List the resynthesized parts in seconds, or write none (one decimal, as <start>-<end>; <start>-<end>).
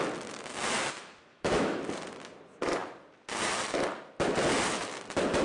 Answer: 1.3-1.8